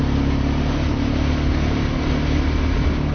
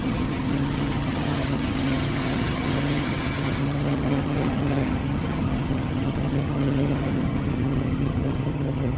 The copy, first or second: second